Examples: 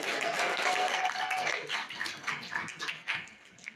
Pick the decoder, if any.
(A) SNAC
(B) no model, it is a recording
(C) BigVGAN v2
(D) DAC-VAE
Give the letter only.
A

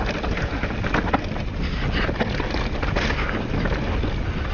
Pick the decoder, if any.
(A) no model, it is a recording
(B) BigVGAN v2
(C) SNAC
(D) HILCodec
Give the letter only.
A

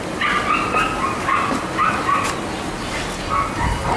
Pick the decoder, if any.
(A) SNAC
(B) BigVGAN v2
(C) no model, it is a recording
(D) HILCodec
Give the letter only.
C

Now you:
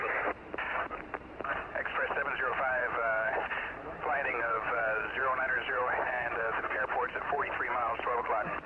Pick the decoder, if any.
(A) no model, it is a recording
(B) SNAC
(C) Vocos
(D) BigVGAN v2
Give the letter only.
D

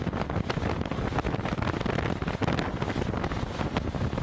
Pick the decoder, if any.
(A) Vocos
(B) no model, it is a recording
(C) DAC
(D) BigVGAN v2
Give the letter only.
B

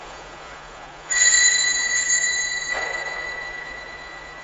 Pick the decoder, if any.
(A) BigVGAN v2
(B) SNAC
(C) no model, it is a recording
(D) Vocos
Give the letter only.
D